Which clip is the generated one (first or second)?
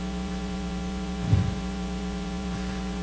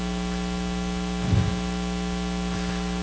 first